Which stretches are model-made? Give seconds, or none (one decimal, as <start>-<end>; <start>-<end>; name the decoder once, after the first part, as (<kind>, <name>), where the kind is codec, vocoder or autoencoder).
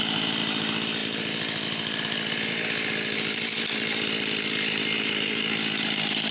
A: 1.0-4.8 (vocoder, BigVGAN v2)